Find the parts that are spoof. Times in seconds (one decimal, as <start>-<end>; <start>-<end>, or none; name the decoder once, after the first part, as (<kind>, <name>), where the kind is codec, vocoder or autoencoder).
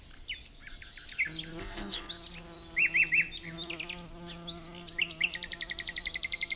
1.6-2.1 (codec, ZipCodec)